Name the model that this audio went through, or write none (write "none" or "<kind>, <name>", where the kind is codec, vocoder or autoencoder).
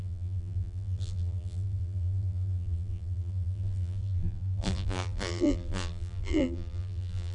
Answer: vocoder, BigVGAN v2